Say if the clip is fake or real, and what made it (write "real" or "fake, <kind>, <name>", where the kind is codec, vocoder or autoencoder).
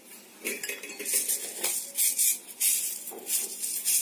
real